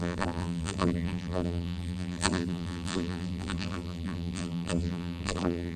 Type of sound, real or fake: fake